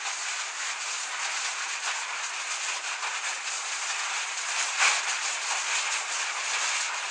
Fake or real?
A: real